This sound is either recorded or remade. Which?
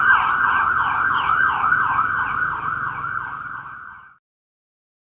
recorded